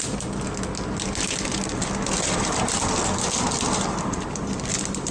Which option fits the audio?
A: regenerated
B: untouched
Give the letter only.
B